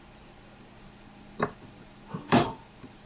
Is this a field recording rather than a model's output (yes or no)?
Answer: no